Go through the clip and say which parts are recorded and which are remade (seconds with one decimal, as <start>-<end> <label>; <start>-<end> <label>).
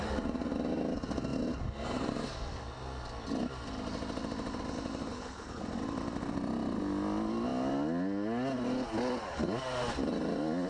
0.0-5.1 recorded; 5.1-5.6 remade; 5.6-10.7 recorded